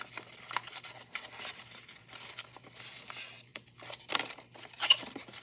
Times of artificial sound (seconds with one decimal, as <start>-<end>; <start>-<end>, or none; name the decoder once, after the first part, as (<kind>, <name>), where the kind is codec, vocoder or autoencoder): none